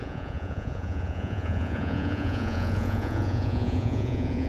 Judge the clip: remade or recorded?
remade